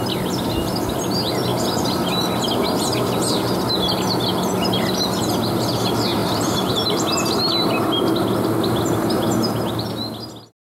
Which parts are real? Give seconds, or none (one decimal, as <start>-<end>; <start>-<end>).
0.0-6.2; 6.7-10.7